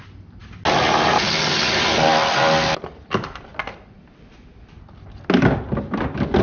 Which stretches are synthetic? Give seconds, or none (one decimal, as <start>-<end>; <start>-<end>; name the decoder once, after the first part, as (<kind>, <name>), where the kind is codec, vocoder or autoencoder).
none

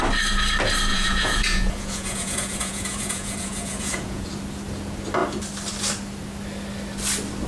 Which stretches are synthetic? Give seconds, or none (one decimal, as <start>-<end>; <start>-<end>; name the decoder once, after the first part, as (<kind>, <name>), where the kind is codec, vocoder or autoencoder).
0.9-4.3 (vocoder, Vocos)

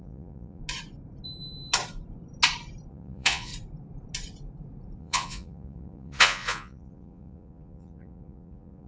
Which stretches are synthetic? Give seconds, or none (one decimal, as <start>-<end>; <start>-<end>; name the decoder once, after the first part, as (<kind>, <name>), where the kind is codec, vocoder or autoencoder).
0.0-0.6 (vocoder, Vocos); 2.9-3.5; 5.0-8.9

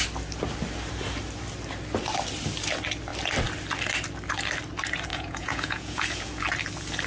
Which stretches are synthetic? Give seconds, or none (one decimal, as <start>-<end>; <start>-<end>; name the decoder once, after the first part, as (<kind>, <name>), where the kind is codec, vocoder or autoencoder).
5.1-6.4 (vocoder, Vocos)

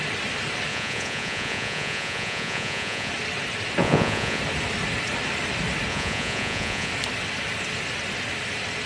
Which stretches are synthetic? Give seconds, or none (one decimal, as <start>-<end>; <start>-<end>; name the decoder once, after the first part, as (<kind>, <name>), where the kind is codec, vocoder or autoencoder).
0.7-3.1 (vocoder, Vocos); 3.8-4.4; 5.9-6.9

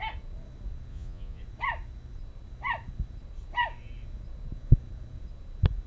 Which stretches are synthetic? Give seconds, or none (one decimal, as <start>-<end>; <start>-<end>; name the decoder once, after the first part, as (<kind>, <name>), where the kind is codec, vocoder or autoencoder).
0.9-1.4 (vocoder, Vocos)

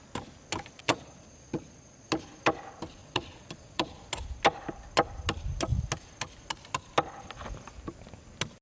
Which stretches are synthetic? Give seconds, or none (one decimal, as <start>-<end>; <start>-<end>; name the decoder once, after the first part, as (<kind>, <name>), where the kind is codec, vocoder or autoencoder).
0.8-2.1 (vocoder, Vocos); 3.0-4.1

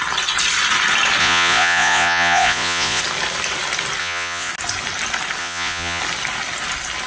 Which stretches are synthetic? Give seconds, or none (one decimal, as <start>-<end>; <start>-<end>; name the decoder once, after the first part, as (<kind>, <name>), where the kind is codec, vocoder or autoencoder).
1.2-3.0 (vocoder, Vocos); 4.0-4.5; 5.4-6.0